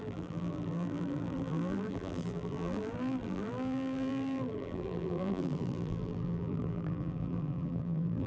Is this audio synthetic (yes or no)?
yes